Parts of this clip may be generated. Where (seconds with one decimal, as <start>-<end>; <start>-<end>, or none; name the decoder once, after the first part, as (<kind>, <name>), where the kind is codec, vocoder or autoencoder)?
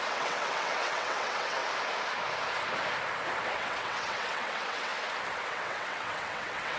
0.0-1.6 (vocoder, WaveNeXt); 3.5-4.9; 5.5-6.8